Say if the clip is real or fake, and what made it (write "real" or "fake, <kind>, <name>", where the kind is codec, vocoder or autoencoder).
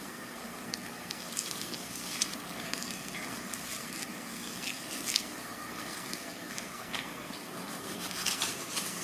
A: fake, codec, SNAC